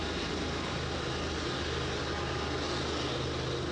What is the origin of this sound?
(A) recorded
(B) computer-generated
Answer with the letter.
A